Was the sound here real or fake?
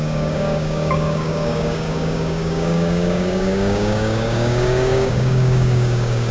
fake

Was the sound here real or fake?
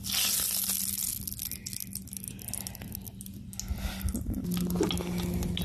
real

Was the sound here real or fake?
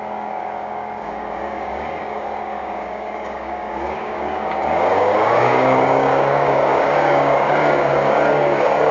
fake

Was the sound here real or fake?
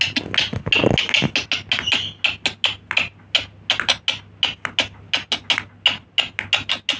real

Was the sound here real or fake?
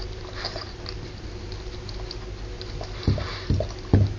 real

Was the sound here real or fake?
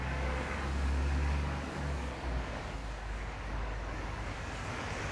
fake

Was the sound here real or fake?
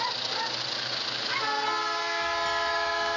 real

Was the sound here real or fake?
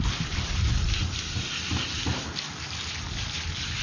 real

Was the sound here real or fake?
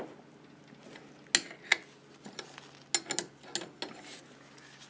real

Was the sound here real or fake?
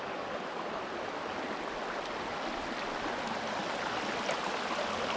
real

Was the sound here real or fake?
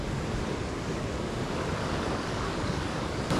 fake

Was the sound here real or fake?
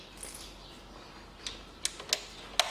real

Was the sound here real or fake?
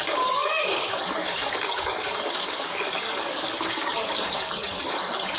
fake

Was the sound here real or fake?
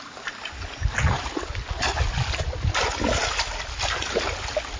real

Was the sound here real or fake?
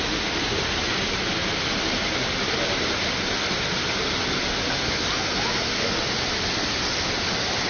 real